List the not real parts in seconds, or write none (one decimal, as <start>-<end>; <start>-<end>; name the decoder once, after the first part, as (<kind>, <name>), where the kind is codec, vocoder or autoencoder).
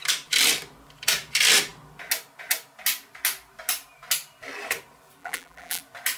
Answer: 5.2-5.8 (vocoder, BigVGAN v2)